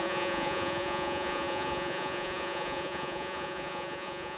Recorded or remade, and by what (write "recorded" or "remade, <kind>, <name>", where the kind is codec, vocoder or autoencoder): remade, vocoder, Vocos